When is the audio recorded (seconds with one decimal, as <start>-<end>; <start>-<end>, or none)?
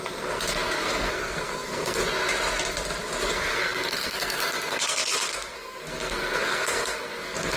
2.0-3.3